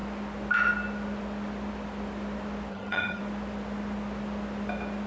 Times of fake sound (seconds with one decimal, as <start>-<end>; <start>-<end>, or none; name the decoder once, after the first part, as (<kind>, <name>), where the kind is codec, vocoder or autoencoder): 2.7-3.2 (vocoder, HiFi-GAN)